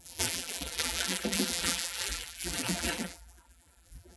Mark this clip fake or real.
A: fake